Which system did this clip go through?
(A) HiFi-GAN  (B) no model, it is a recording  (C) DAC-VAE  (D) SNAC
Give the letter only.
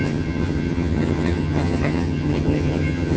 A